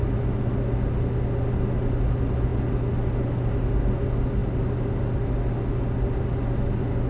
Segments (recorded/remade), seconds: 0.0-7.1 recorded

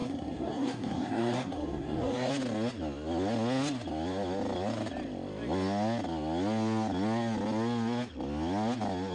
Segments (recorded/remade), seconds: 0.0-2.3 remade; 2.3-9.1 recorded